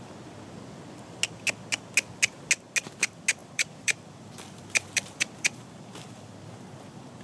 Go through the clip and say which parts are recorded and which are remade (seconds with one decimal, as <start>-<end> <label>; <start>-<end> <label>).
0.0-3.4 recorded; 3.4-6.1 remade; 6.1-7.2 recorded